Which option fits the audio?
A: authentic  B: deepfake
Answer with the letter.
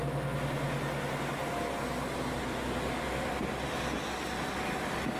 A